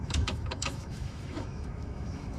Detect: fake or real fake